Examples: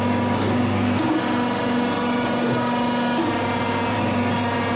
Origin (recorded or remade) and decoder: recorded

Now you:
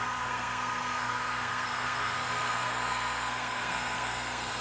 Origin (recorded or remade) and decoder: remade, codec, SNAC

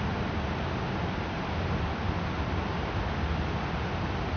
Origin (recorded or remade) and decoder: recorded